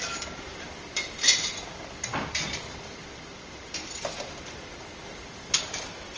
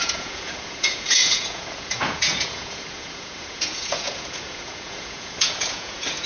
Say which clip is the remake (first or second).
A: second